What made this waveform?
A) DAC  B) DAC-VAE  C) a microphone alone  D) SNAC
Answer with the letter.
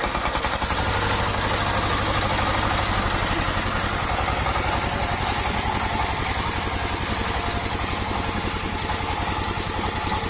C